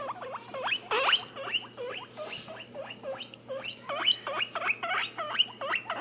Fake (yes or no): no